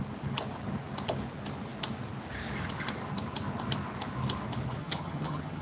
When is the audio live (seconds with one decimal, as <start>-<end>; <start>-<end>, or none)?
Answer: 0.0-4.8